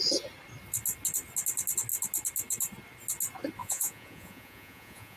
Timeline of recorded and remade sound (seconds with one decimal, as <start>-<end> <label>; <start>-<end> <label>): 0.0-3.6 recorded; 3.6-5.2 remade